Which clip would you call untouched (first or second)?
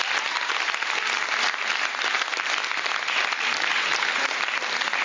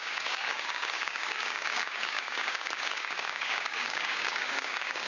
first